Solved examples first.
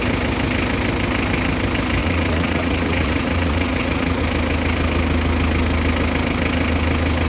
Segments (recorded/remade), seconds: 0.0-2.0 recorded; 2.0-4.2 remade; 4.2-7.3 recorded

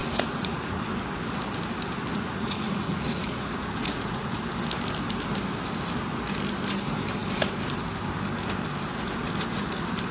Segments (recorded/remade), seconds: 0.0-0.8 remade; 0.8-2.1 recorded; 2.1-4.4 remade; 4.4-10.1 recorded

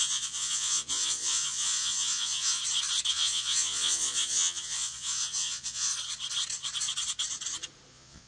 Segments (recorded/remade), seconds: 0.0-2.6 remade; 2.6-3.1 recorded; 3.1-5.9 remade; 5.9-7.9 recorded; 7.9-8.3 remade

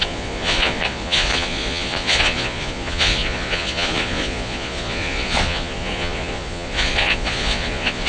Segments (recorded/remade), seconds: 0.0-8.1 remade

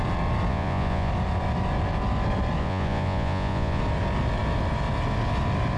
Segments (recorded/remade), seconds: 0.0-0.5 recorded; 0.5-1.1 remade; 1.1-2.6 recorded; 2.6-3.8 remade; 3.8-5.8 recorded

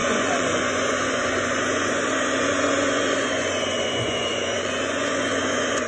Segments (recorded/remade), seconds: 0.0-5.9 remade

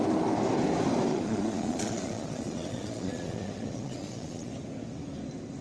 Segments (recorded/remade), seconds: 0.0-1.1 recorded; 1.1-4.5 remade; 4.5-5.6 recorded

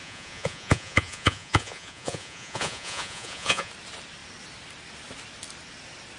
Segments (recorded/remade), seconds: 0.0-3.7 remade; 3.7-6.2 recorded